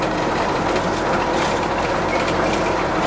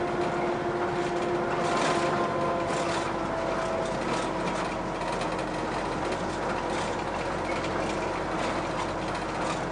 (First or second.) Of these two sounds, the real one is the second